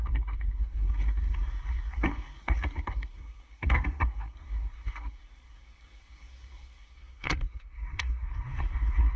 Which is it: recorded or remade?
remade